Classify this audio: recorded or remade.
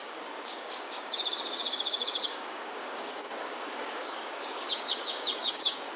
remade